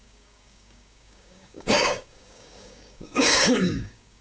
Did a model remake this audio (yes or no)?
yes